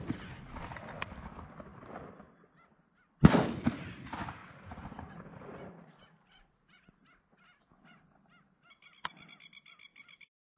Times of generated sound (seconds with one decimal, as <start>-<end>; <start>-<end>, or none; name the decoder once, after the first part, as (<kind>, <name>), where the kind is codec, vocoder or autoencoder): 4.4-6.9 (vocoder, Vocos)